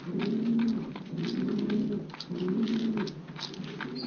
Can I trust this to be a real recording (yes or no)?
yes